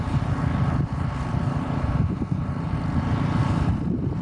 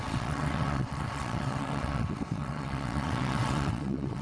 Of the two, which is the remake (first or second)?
second